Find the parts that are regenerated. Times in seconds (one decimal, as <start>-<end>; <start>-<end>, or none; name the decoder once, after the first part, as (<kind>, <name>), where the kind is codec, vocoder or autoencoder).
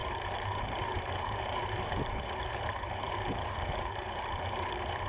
0.0-5.1 (vocoder, BigVGAN v2)